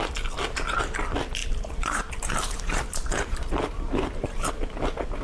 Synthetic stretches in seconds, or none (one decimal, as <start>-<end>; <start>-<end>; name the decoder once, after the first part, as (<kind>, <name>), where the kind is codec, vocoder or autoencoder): 1.4-4.5 (vocoder, BigVGAN v2)